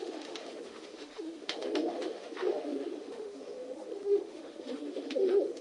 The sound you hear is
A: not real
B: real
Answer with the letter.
A